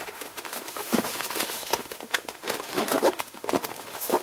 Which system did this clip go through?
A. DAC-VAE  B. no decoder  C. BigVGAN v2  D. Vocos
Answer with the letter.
A